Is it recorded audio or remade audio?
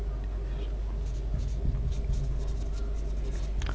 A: recorded